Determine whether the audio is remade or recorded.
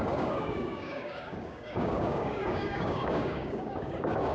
remade